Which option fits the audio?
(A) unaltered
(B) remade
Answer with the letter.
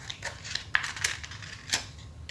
A